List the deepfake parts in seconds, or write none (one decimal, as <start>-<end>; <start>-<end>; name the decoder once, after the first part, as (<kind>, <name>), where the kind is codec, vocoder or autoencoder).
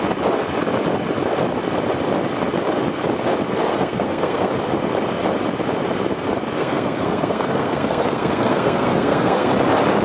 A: 3.7-4.5 (codec, SNAC); 6.6-9.5